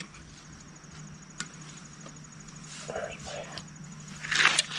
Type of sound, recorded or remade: recorded